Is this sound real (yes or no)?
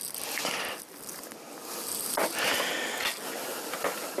yes